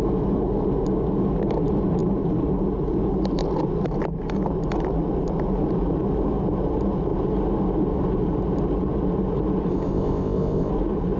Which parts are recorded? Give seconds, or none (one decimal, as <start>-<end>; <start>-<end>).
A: 0.0-9.7; 10.7-11.2